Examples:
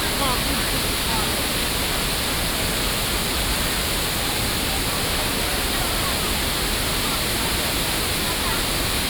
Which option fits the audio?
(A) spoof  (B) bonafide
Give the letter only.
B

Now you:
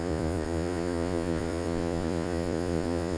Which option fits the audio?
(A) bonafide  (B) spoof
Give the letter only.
B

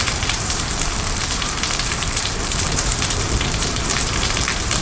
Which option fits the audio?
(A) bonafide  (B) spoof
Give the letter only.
B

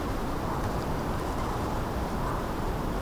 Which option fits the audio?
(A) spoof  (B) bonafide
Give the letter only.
A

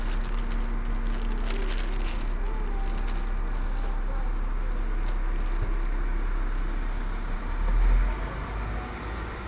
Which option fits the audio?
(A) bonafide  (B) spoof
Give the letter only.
A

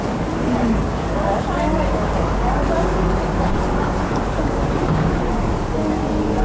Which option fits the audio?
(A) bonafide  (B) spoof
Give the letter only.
B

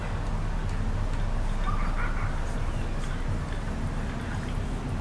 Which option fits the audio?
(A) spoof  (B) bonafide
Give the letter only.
B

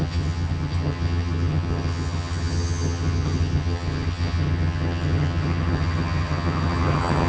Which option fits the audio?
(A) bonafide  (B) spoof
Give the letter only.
B